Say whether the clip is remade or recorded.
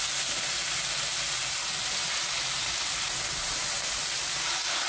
recorded